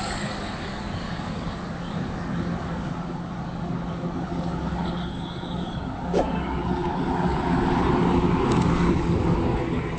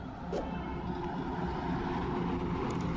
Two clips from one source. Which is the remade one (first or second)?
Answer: first